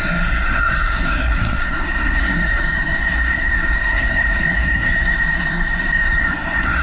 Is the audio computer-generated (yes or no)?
yes